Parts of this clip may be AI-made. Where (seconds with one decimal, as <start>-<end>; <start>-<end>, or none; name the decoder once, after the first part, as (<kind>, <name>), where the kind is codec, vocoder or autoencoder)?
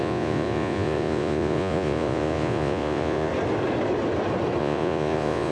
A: 0.0-3.3 (vocoder, Vocos); 4.6-5.5